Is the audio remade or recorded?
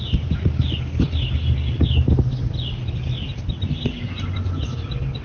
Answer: recorded